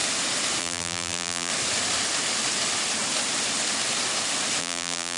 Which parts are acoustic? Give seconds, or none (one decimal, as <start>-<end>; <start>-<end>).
0.0-0.6; 1.5-4.6